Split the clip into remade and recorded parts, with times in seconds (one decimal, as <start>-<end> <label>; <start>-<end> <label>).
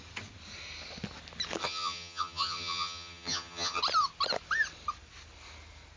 0.0-1.6 recorded; 1.6-3.8 remade; 3.8-6.0 recorded